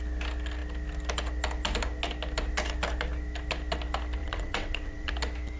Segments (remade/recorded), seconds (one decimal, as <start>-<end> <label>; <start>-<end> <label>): 0.0-4.2 recorded; 4.2-5.1 remade; 5.1-5.6 recorded

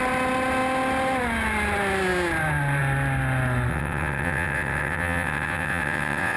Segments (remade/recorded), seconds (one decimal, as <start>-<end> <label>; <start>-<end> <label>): 0.0-3.7 recorded; 3.7-6.4 remade

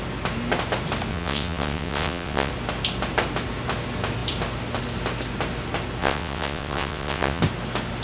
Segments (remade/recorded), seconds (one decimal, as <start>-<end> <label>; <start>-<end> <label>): 0.0-1.1 recorded; 1.1-2.5 remade; 2.5-6.0 recorded; 6.0-7.4 remade; 7.4-8.0 recorded

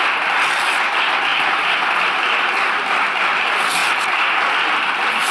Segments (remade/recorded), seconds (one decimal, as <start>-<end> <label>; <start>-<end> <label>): 0.0-5.3 recorded